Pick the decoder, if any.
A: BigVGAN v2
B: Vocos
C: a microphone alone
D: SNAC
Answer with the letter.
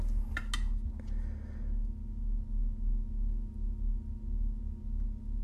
C